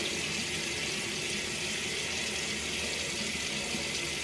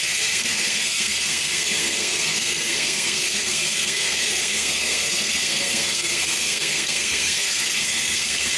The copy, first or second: second